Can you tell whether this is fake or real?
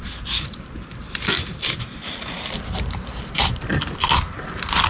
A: real